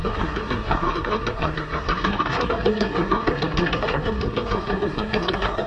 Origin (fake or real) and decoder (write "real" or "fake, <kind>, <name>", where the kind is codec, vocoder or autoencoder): fake, codec, SNAC